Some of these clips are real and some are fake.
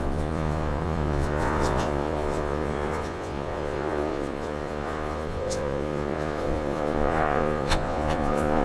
fake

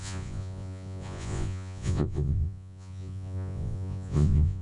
fake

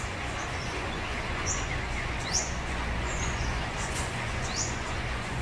fake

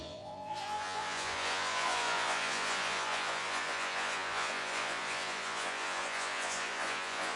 fake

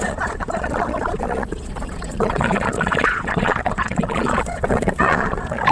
fake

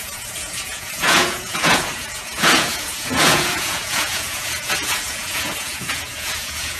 fake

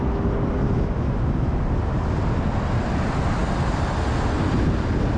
real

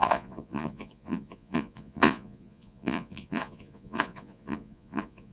fake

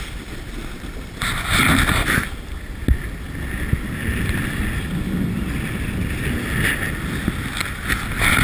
real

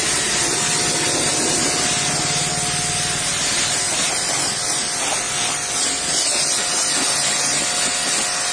real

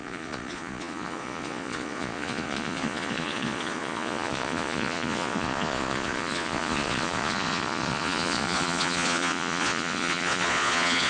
fake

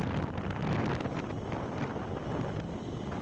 real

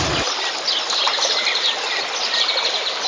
real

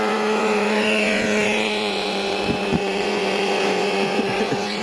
fake